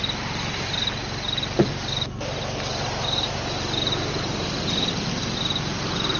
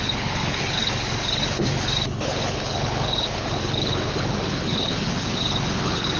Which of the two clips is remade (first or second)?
second